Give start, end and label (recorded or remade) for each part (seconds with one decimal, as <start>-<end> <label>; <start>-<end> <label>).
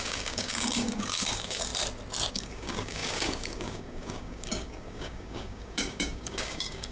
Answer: 0.0-1.7 remade; 1.7-2.3 recorded; 2.3-6.9 remade